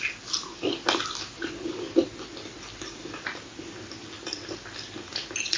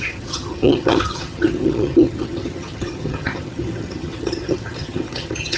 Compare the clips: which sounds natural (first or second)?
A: first